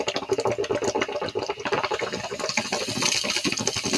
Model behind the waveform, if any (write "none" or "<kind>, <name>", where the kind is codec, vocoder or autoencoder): none